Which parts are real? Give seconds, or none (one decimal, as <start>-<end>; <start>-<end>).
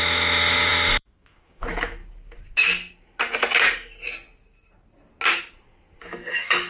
2.0-6.0